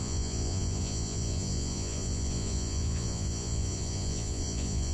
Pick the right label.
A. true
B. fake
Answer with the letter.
B